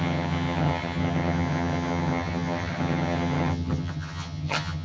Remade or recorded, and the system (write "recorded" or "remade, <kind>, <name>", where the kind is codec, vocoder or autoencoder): remade, vocoder, HiFi-GAN